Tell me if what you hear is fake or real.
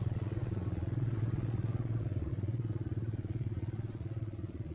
fake